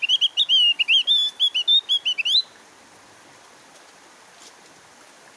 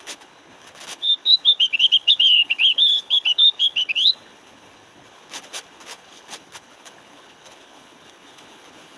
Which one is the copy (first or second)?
second